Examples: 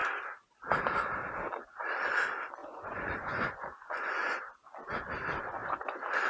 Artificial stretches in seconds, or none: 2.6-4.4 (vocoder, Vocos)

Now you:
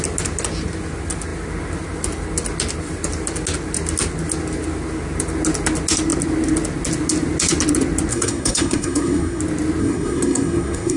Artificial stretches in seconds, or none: 8.1-9.4 (codec, SNAC); 9.8-11.0

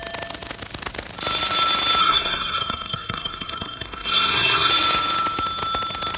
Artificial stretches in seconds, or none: 2.0-4.7 (codec, SNAC)

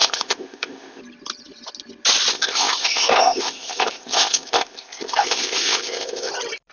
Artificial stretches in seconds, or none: 0.0-1.0 (codec, ZipCodec); 2.3-6.3

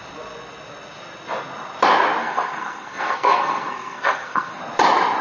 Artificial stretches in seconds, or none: 2.2-4.6 (codec, SNAC)